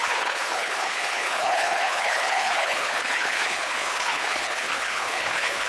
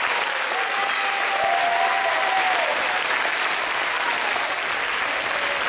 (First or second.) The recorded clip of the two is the second